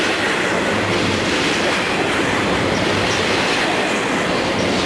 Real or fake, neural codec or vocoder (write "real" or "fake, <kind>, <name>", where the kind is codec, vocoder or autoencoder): real